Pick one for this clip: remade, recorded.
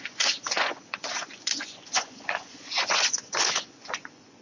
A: remade